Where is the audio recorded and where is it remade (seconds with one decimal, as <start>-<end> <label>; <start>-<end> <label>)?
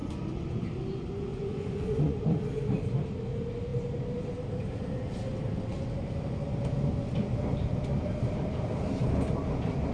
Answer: 0.0-0.6 remade; 0.6-1.3 recorded; 1.3-2.4 remade; 2.4-9.9 recorded